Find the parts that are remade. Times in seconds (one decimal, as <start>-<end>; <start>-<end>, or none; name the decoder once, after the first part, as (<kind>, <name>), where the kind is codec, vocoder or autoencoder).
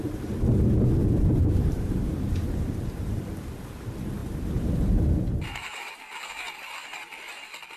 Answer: 1.0-3.2 (vocoder, BigVGAN v2); 4.2-5.0